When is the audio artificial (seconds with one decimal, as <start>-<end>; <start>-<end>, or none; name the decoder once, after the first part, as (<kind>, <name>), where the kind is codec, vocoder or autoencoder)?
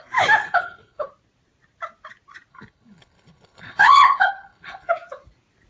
0.4-1.1 (codec, HILCodec); 2.5-4.9